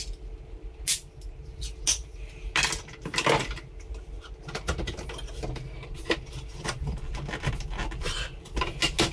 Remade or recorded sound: recorded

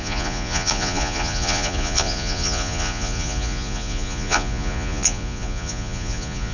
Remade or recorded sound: remade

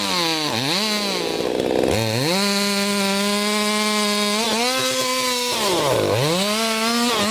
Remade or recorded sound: recorded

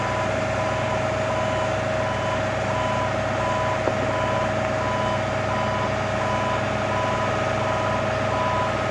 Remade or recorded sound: recorded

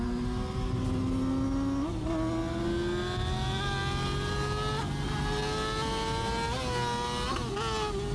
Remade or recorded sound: recorded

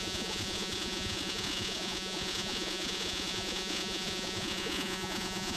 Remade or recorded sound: remade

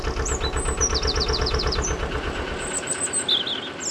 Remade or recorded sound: recorded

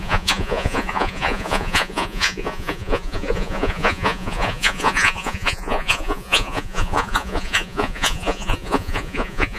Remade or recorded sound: remade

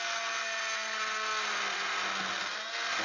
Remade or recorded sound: recorded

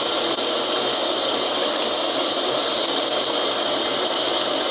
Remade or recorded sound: recorded